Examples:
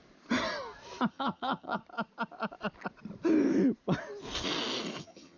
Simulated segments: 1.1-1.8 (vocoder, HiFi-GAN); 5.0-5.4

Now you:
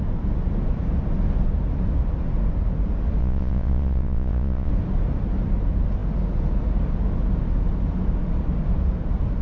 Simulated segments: 3.2-4.7 (vocoder, Vocos)

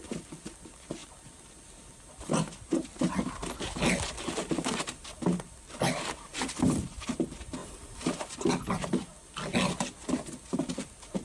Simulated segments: 6.3-7.1 (vocoder, BigVGAN v2); 7.6-8.3